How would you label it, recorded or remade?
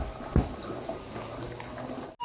recorded